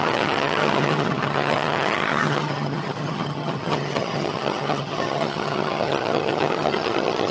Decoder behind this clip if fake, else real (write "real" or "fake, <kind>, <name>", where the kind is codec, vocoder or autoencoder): fake, vocoder, HiFi-GAN